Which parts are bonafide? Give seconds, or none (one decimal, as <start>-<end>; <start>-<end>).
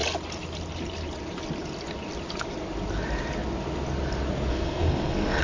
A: 0.0-4.5